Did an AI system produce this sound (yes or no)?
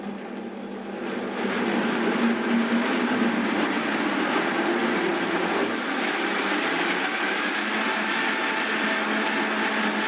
no